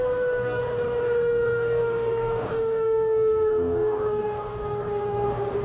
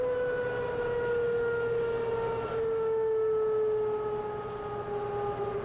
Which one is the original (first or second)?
second